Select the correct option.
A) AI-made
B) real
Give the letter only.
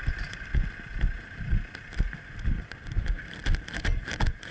B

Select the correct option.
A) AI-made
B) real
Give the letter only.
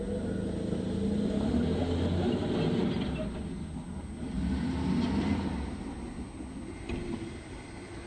B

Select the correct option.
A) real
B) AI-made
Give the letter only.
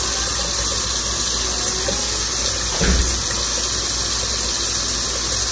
A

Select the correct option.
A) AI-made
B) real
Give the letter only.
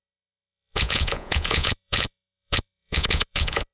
A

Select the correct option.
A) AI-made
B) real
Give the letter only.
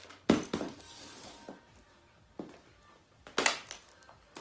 B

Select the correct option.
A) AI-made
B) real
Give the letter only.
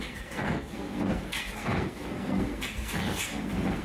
A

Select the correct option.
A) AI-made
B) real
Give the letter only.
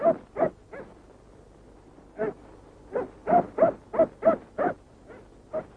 B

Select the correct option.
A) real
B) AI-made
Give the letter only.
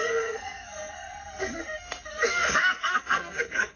B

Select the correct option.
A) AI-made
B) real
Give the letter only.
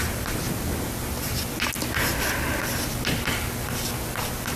B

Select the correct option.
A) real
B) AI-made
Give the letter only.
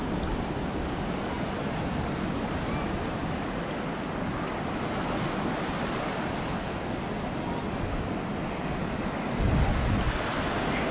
A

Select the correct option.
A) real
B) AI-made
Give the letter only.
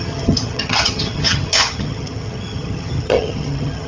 B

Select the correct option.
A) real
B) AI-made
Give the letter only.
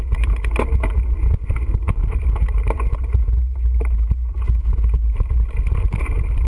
B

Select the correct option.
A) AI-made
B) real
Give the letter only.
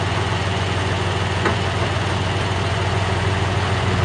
A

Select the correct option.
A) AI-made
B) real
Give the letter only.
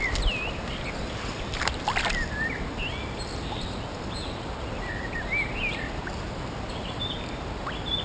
B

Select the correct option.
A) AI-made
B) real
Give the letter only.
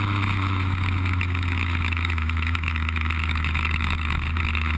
A